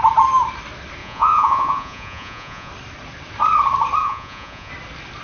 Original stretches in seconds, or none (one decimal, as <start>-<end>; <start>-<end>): 0.0-1.0; 2.7-4.0; 4.7-5.2